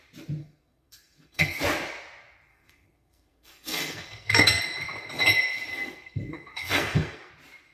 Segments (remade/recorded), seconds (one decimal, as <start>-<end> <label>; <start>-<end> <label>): 0.0-0.4 recorded; 0.4-1.6 remade; 1.6-2.5 recorded; 2.5-4.6 remade; 4.6-5.7 recorded; 5.7-7.3 remade; 7.3-7.7 recorded